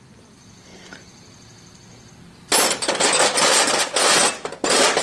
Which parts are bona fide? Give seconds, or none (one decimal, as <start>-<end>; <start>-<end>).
0.0-5.0